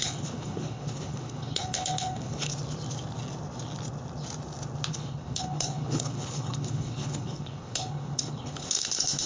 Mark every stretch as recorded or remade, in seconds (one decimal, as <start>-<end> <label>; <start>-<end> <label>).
0.0-2.5 remade; 2.5-4.9 recorded; 4.9-9.3 remade